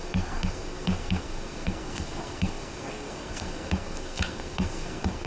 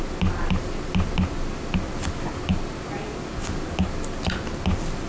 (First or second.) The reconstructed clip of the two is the first